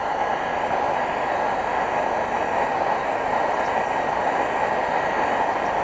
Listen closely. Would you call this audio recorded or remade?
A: recorded